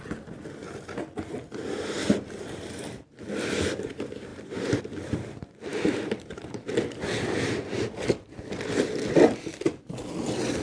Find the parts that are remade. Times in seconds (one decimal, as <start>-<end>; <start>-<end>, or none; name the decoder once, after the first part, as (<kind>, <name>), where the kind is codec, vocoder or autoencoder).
2.0-3.2 (vocoder, BigVGAN v2); 5.7-8.7